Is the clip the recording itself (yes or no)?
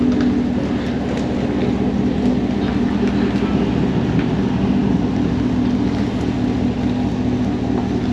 yes